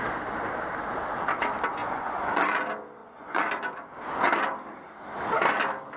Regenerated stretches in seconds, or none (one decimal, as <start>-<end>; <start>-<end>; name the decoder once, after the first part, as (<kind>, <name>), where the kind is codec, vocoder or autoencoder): 1.8-2.6 (vocoder, Vocos); 3.0-3.5